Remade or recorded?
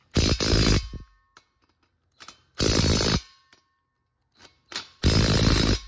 recorded